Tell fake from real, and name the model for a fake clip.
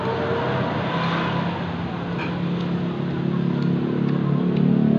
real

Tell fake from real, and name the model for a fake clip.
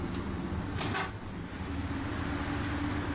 real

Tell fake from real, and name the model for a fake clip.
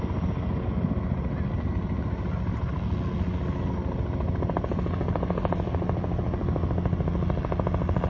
real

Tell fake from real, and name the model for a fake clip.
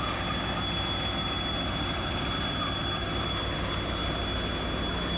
real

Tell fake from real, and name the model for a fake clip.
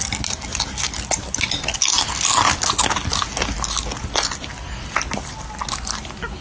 real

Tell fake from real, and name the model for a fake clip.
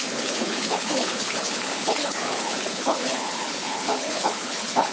fake, codec, HILCodec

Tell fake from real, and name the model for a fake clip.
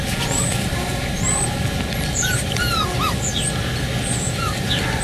real